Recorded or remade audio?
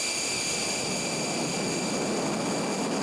recorded